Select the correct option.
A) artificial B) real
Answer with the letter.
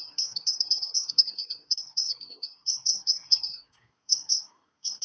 A